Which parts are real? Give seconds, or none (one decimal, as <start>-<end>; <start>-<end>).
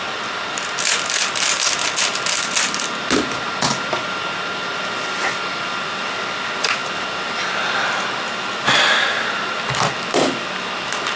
0.0-11.2